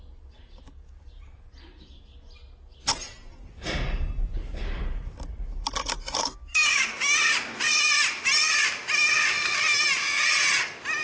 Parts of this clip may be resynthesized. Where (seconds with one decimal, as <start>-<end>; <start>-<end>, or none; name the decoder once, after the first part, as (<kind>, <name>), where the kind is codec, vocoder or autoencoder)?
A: 6.2-6.8 (codec, DAC)